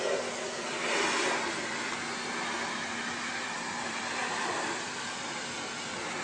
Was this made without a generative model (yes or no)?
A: no